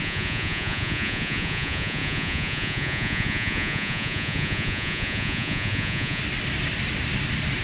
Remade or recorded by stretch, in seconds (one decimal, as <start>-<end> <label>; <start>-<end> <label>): 0.0-6.2 remade; 6.2-7.6 recorded